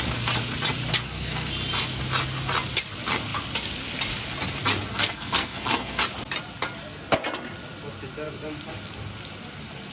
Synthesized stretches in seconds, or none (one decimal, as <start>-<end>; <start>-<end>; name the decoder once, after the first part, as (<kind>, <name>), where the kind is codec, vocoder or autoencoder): 0.9-1.5 (codec, SNAC); 4.9-6.0